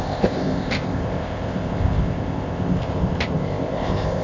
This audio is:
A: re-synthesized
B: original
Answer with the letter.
A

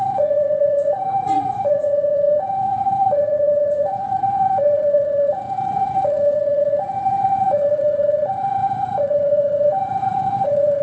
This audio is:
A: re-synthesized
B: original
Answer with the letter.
A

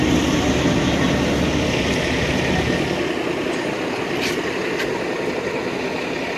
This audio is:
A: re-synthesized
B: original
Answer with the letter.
B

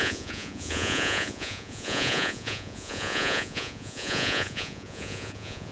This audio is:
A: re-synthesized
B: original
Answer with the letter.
A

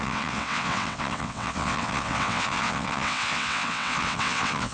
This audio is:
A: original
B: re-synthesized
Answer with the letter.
B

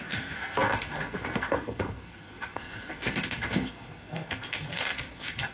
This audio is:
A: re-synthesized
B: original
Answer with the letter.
A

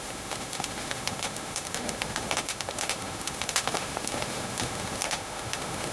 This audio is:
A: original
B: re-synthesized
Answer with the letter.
B